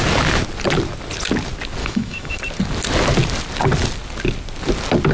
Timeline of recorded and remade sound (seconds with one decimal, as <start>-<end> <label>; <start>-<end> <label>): 0.0-1.8 recorded; 1.8-2.4 remade; 2.4-5.1 recorded